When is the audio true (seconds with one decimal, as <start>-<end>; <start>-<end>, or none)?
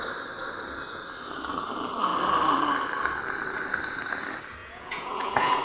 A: 0.0-4.6